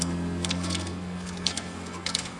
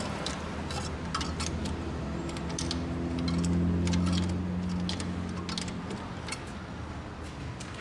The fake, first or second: first